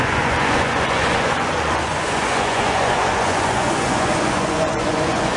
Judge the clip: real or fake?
fake